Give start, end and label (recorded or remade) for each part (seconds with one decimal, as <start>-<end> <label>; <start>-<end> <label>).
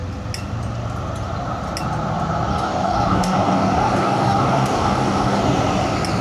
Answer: 0.0-2.5 recorded; 2.5-5.4 remade; 5.4-6.2 recorded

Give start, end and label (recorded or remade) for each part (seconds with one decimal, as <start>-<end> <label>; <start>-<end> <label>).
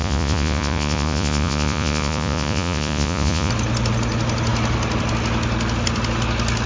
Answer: 0.0-3.5 remade; 3.5-6.7 recorded